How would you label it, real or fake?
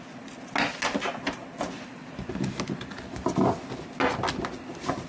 real